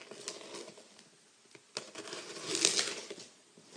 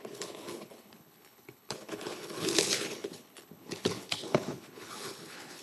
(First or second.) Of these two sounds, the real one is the first